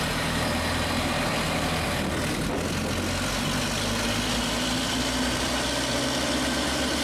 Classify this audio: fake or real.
real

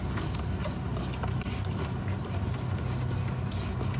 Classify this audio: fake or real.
real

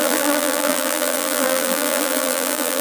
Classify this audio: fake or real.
fake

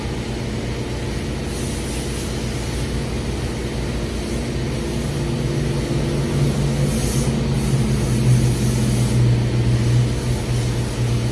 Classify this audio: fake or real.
real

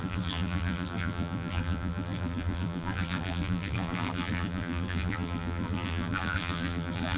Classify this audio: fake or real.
fake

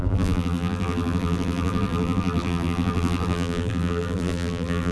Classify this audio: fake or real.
fake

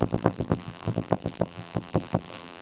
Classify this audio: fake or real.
fake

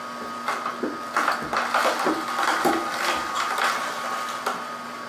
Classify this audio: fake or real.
real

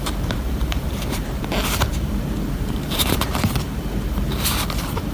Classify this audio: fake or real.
fake